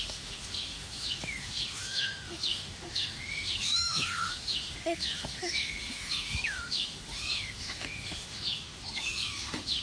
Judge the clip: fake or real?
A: fake